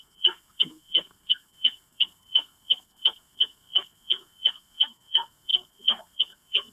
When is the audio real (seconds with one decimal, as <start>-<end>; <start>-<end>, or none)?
none